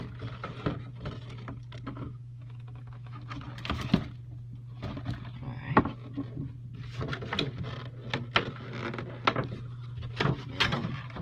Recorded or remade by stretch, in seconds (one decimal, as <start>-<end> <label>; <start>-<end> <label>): 0.0-1.9 recorded; 1.9-3.3 remade; 3.3-11.2 recorded